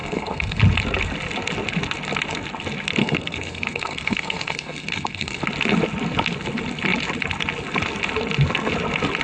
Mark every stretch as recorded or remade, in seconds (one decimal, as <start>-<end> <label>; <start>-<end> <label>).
0.0-0.6 remade; 0.6-3.0 recorded; 3.0-5.4 remade; 5.4-9.2 recorded